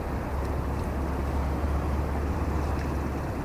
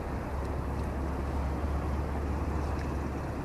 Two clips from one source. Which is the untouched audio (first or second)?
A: second